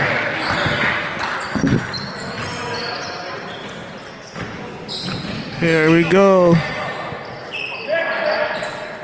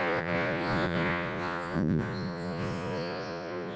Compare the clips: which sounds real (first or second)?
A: first